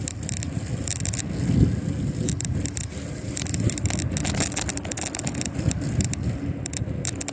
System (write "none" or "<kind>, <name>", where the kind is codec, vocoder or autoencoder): none